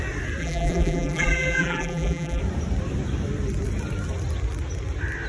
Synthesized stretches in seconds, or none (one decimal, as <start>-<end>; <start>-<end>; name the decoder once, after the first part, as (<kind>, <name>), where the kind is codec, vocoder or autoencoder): 0.4-2.4 (vocoder, BigVGAN v2)